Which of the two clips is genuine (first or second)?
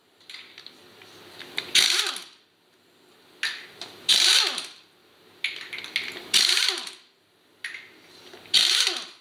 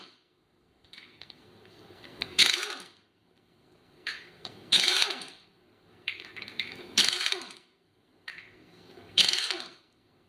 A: first